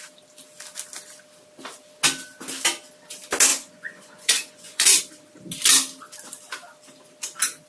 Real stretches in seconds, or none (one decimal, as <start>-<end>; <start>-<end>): 0.0-3.5; 5.0-7.7